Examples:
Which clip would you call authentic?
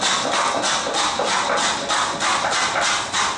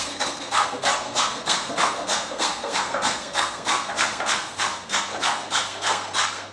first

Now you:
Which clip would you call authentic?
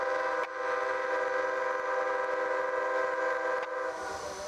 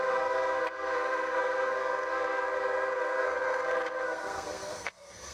first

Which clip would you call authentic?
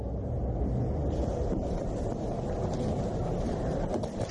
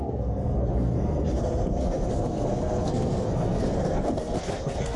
first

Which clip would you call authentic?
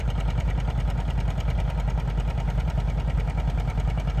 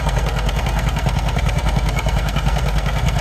first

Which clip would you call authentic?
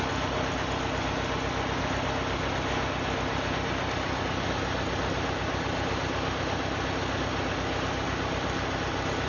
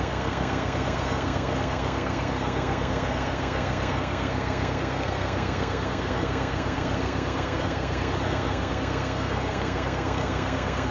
first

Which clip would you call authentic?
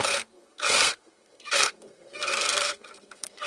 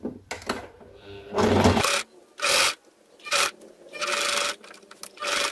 second